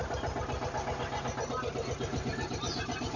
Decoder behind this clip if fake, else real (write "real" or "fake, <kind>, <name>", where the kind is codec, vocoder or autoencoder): real